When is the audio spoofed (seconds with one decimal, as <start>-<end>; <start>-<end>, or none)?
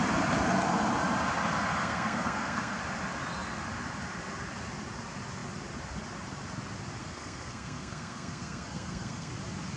1.7-2.8; 7.0-9.3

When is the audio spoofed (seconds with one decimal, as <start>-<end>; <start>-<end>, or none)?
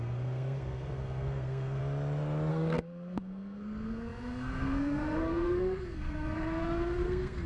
0.0-1.8; 2.5-7.5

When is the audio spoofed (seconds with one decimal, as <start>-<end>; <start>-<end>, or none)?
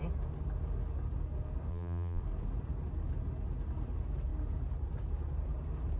1.7-2.2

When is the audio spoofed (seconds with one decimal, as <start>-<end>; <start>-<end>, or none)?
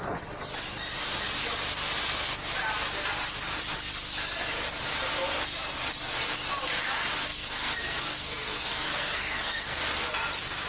7.3-9.8